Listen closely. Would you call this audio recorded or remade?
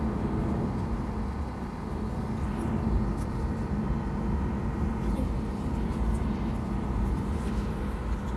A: recorded